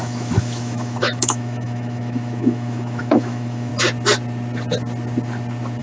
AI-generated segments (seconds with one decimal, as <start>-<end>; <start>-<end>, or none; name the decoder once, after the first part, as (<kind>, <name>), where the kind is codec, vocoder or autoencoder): 0.0-3.7 (autoencoder, DAC-VAE)